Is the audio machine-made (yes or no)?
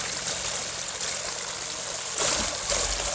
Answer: no